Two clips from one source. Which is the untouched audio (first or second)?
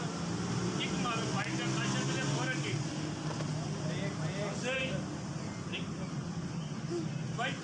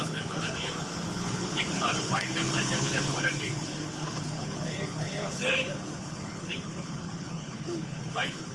first